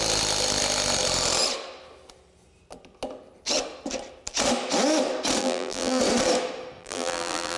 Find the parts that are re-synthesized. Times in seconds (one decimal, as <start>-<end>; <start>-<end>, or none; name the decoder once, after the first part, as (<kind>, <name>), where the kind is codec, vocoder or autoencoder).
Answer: 5.4-6.0 (vocoder, BigVGAN v2); 6.8-7.6